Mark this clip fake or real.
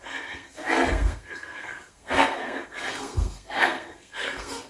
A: fake